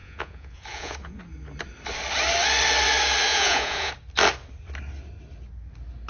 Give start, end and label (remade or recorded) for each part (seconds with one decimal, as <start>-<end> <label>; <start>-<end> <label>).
0.0-1.2 remade; 1.2-3.3 recorded; 3.3-3.9 remade; 3.9-6.1 recorded